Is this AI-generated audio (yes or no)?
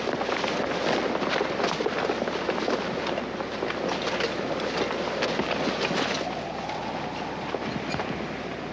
no